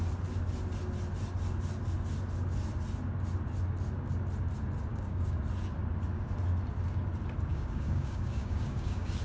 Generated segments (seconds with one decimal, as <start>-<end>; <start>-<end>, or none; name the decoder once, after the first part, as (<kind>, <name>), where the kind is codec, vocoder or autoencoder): 4.9-5.4 (codec, DAC); 7.5-9.2